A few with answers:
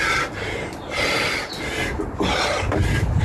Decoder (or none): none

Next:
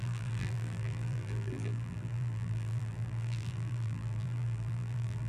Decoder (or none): vocoder, BigVGAN v2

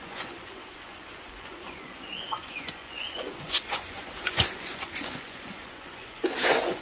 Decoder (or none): vocoder, Vocos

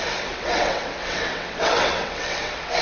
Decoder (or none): vocoder, WaveNeXt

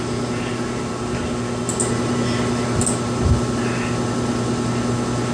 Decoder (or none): none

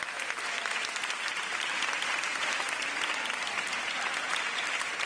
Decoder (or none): none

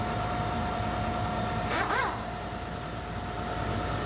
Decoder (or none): none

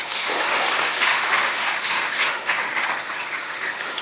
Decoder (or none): autoencoder, DAC-VAE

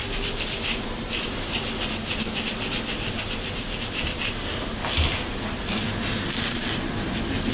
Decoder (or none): none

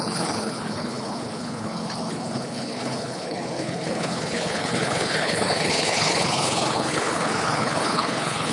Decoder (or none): codec, HILCodec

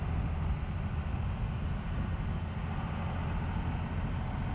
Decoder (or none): none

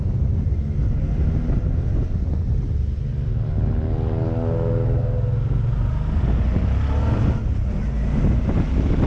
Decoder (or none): none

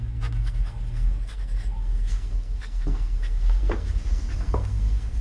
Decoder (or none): codec, SNAC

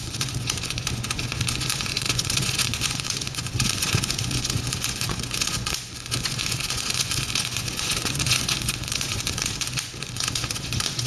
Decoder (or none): vocoder, Vocos